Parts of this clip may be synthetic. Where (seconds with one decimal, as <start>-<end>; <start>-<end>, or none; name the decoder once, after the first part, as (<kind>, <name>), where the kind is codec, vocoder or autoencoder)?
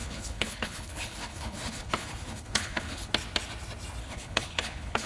0.0-3.1 (codec, HILCodec); 4.0-5.1